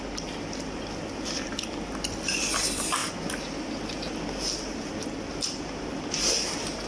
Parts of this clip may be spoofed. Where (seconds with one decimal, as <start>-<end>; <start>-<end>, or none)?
none